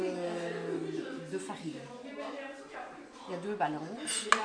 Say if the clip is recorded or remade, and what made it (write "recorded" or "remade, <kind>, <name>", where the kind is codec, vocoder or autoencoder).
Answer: recorded